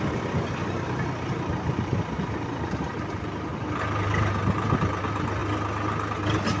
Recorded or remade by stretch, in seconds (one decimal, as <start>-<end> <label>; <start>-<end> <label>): 0.0-3.5 remade; 3.5-5.0 recorded; 5.0-5.4 remade; 5.4-6.6 recorded